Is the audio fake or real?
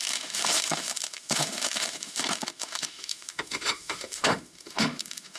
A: fake